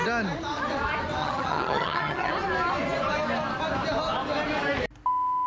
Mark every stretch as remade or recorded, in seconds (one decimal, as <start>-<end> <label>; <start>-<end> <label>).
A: 0.0-1.2 recorded; 1.2-2.3 remade; 2.3-5.5 recorded

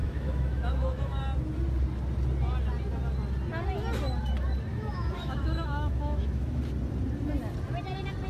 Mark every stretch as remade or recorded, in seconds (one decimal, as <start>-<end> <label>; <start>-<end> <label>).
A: 0.0-1.2 remade; 1.2-4.7 recorded; 4.7-6.6 remade; 6.6-8.3 recorded

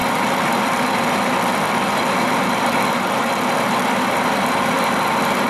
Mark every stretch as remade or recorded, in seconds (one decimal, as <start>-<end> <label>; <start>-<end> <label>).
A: 0.0-3.3 remade; 3.3-5.5 recorded

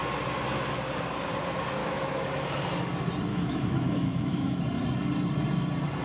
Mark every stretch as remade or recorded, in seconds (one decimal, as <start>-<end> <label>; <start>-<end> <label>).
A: 0.0-1.8 recorded; 1.8-2.6 remade; 2.6-3.3 recorded; 3.3-4.6 remade; 4.6-6.0 recorded